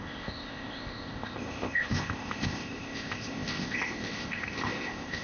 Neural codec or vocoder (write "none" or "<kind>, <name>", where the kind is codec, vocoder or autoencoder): codec, ZipCodec